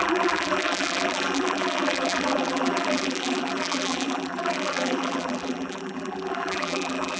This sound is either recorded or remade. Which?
remade